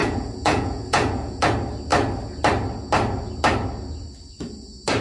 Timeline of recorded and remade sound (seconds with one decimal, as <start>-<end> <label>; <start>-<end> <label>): 0.0-1.5 remade; 1.5-5.0 recorded